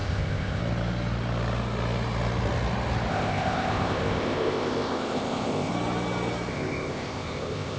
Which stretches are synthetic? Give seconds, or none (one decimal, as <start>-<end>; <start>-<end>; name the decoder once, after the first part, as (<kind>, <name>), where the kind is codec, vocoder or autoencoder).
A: 0.0-0.6 (codec, ZipCodec); 3.1-5.7; 6.5-7.8